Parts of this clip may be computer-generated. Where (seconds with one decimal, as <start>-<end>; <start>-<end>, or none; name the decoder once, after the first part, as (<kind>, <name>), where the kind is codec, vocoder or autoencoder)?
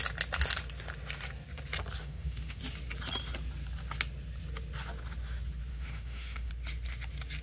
2.0-2.6 (autoencoder, DAC-VAE); 5.7-6.5